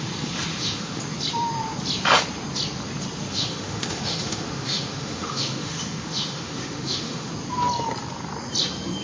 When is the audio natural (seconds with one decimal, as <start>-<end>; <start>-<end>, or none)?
0.0-0.5; 1.0-3.3; 7.3-9.0